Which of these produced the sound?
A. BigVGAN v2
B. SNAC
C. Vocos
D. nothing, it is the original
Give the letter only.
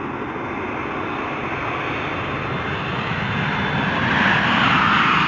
D